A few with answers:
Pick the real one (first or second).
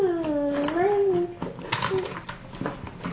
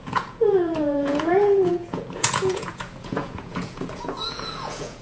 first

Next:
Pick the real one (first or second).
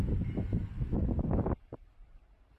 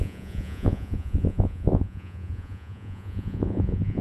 first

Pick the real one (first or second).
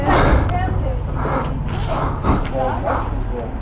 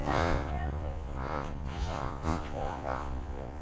first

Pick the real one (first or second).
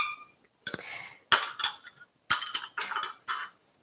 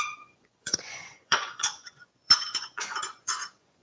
first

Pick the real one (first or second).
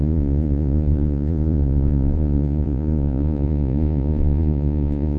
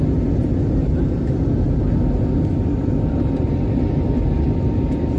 second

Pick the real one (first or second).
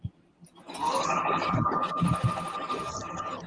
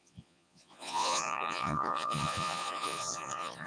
first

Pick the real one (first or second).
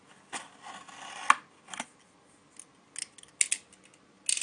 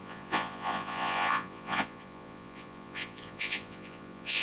first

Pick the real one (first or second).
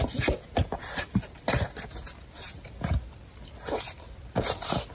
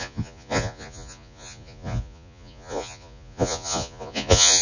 first